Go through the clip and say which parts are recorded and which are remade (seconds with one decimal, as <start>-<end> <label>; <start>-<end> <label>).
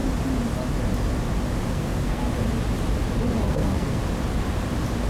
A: 0.0-1.6 recorded; 1.6-2.2 remade; 2.2-3.4 recorded; 3.4-4.0 remade; 4.0-5.1 recorded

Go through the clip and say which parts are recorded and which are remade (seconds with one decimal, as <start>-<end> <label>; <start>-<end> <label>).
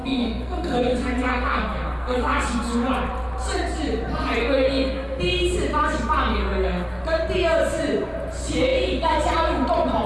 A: 0.0-2.9 remade; 2.9-4.4 recorded; 4.4-5.2 remade; 5.2-6.4 recorded; 6.4-7.0 remade; 7.0-10.1 recorded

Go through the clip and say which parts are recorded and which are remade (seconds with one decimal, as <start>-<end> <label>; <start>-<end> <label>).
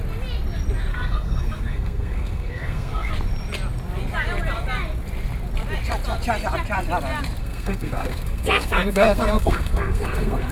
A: 0.0-0.9 recorded; 0.9-3.1 remade; 3.1-7.4 recorded; 7.4-10.5 remade